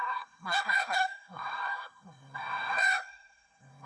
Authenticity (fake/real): fake